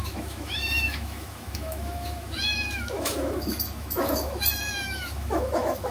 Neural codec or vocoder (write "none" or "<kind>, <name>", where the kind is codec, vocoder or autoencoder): autoencoder, DAC-VAE